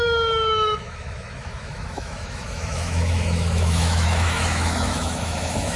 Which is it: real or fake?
fake